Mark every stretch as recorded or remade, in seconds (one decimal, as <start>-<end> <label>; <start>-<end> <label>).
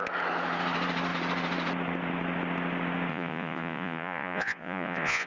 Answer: 0.0-3.1 recorded; 3.1-5.3 remade